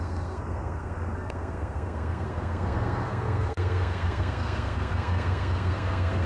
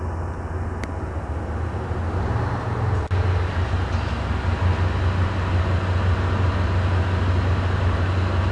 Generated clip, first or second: first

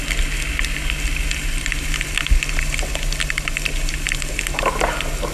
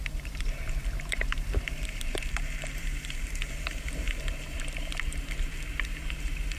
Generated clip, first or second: second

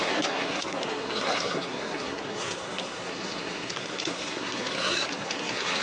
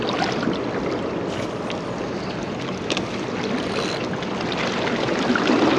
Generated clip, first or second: first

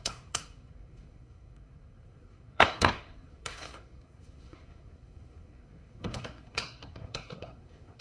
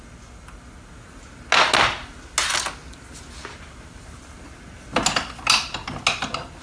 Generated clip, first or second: first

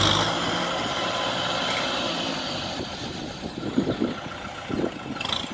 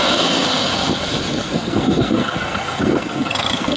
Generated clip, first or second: second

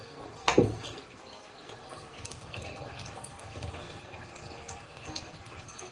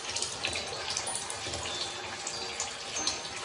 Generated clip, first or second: first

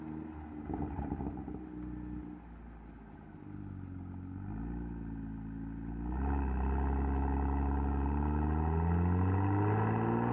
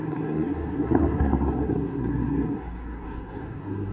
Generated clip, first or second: second